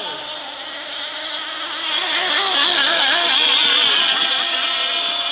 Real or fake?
real